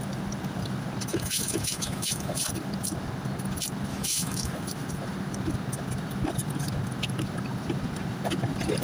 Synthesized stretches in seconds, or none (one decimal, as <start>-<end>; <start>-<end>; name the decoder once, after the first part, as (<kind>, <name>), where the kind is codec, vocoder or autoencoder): 1.1-2.4 (autoencoder, DAC-VAE); 3.9-4.5